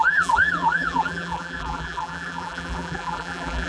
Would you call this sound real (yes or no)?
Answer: no